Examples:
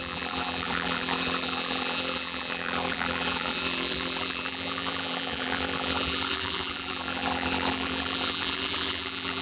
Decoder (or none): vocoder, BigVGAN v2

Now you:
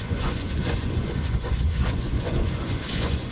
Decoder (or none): vocoder, Vocos